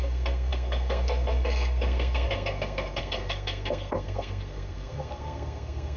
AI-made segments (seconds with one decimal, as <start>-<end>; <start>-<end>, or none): 0.0-6.0